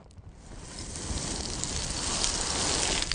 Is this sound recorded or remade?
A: recorded